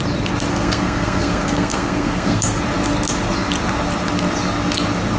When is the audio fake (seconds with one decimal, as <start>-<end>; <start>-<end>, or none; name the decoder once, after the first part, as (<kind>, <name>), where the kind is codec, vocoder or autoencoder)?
0.5-2.6 (codec, SNAC)